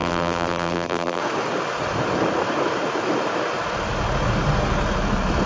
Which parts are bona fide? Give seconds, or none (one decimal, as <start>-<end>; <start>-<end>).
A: 1.2-5.5